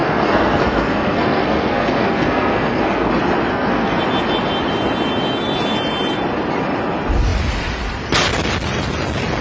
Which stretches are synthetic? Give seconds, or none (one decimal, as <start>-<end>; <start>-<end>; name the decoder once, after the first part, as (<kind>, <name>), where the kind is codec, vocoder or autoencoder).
0.0-3.1 (codec, SNAC); 3.5-4.0